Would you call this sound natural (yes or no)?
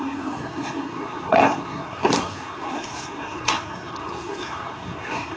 no